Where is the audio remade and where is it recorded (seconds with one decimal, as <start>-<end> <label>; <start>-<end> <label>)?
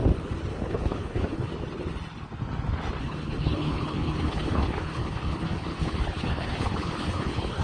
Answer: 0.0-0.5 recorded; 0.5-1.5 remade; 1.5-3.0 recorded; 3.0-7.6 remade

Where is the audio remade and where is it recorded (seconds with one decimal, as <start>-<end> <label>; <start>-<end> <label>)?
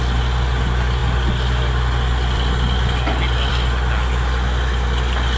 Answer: 0.0-5.4 recorded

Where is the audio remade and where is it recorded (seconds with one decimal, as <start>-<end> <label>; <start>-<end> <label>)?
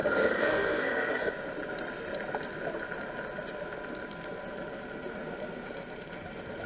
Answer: 0.0-1.3 remade; 1.3-6.7 recorded